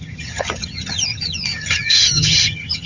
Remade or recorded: remade